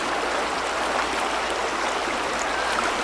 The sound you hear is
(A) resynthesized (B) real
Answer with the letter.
B